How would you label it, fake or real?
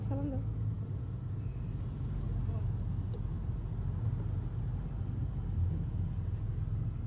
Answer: real